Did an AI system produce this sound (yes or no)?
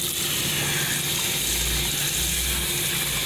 no